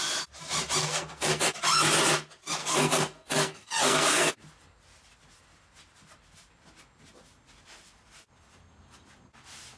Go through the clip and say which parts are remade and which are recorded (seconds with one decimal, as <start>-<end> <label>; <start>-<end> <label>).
0.0-0.8 recorded; 0.8-1.6 remade; 1.6-2.6 recorded; 2.6-4.3 remade; 4.3-9.8 recorded